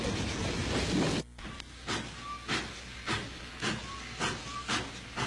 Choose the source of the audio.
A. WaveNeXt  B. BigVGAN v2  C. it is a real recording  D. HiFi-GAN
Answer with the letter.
C